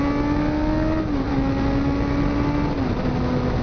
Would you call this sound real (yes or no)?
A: yes